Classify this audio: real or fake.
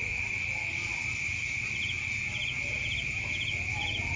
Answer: real